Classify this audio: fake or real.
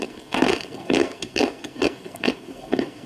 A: fake